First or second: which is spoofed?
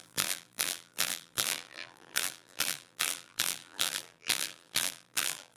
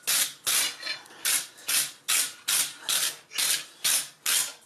first